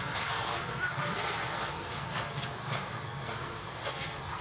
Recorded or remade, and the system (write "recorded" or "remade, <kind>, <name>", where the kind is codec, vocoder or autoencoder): remade, codec, SNAC